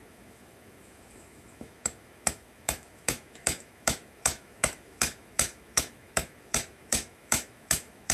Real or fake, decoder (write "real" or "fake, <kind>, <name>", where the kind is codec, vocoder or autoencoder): fake, autoencoder, DAC-VAE